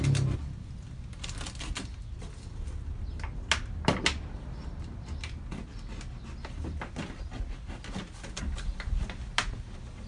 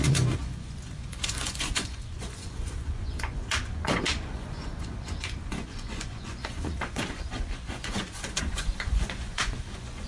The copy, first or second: second